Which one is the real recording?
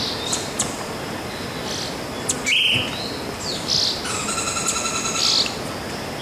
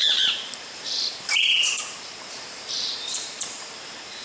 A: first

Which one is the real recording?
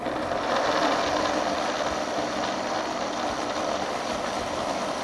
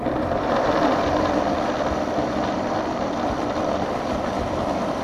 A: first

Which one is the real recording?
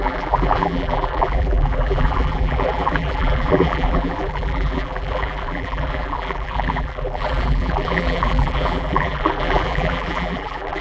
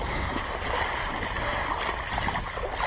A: second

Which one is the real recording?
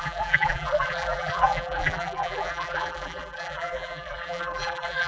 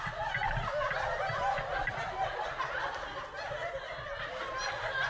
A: second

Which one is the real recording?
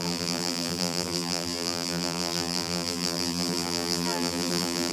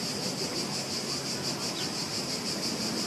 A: second